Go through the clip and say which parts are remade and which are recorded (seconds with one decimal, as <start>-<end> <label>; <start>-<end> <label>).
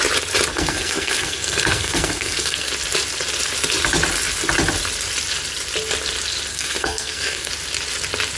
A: 0.0-0.5 recorded; 0.5-2.7 remade; 2.7-6.5 recorded; 6.5-7.5 remade; 7.5-8.4 recorded